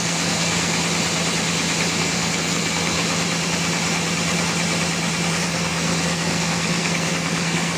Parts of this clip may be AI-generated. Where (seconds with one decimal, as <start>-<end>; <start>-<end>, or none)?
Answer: 0.0-0.7; 2.0-3.0; 5.3-7.8